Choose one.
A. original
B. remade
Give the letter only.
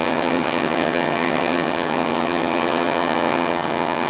B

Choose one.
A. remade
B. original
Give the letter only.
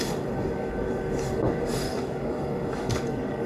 A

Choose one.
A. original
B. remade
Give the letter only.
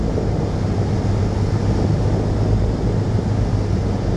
A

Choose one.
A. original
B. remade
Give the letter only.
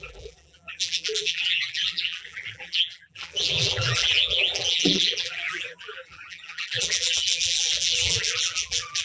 B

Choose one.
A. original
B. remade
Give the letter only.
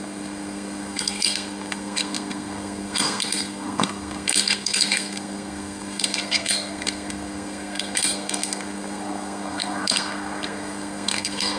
B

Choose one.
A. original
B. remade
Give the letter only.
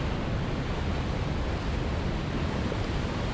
A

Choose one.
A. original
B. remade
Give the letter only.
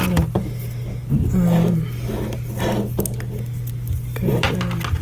A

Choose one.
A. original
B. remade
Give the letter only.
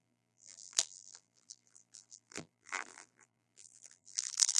B